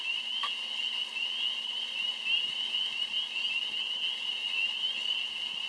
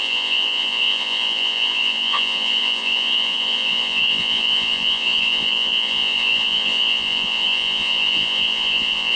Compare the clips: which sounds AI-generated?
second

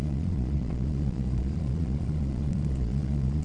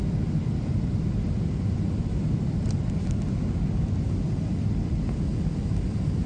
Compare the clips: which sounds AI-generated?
first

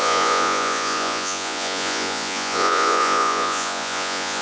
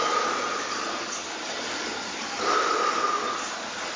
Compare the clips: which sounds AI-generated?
first